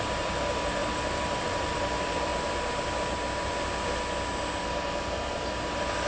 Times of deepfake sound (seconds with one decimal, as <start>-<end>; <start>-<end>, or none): 0.0-2.3

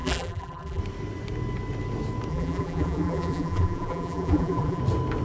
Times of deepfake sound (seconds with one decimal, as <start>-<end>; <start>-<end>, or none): 0.0-0.8; 2.3-4.8

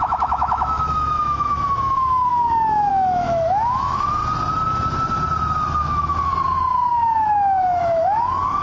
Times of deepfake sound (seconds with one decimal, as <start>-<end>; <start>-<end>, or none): 0.0-4.2; 5.8-6.3; 6.9-8.6